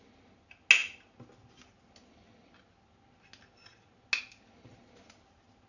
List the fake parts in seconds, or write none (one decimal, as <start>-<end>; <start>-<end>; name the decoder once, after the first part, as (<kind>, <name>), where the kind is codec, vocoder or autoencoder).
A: none